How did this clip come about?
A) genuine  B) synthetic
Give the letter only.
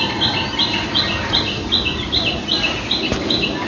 A